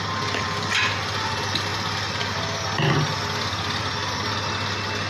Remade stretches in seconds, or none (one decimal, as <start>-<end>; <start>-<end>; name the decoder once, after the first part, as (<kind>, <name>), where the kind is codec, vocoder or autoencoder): none